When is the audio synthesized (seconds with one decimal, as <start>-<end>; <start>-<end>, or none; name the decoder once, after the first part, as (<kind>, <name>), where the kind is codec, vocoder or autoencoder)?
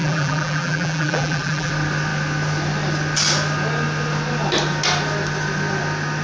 0.0-1.7 (vocoder, BigVGAN v2)